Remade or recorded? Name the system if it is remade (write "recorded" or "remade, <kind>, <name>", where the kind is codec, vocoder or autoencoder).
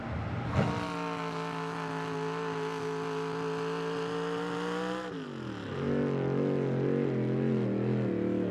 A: recorded